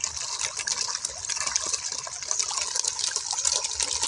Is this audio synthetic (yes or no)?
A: no